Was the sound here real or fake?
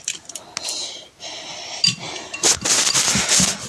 real